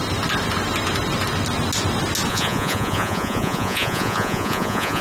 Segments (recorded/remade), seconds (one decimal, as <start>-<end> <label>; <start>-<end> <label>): 0.0-2.3 recorded; 2.3-5.0 remade